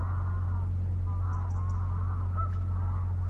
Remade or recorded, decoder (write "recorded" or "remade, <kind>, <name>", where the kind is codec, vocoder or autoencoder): recorded